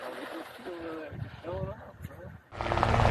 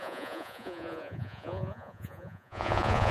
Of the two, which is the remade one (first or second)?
second